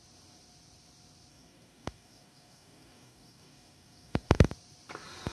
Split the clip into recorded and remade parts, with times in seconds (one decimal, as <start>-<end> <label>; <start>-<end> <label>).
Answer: 0.0-1.3 recorded; 1.3-4.5 remade; 4.5-5.3 recorded